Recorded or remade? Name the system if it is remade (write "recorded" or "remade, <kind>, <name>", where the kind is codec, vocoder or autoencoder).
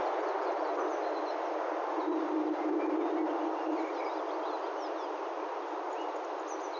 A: recorded